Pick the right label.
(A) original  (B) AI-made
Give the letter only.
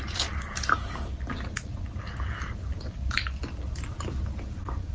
A